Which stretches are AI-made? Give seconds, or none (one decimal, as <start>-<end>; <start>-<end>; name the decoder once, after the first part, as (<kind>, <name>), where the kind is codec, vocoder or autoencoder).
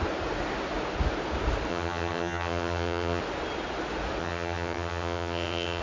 1.7-3.2 (vocoder, HiFi-GAN); 4.2-5.8